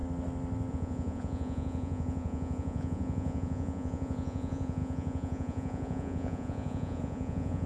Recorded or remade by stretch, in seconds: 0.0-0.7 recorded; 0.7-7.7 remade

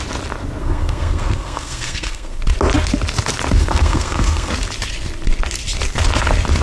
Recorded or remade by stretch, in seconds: 0.0-0.6 recorded; 0.6-2.4 remade; 2.4-3.6 recorded; 3.6-4.5 remade; 4.5-6.6 recorded